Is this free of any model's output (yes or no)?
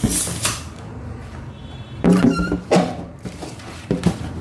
no